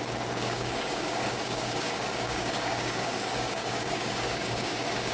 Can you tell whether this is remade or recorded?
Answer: remade